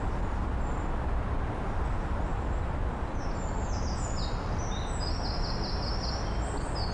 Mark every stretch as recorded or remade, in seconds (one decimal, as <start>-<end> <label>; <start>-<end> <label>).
0.0-6.9 recorded